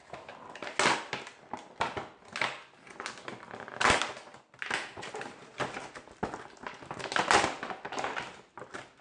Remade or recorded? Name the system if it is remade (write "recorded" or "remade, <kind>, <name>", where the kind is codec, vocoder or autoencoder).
recorded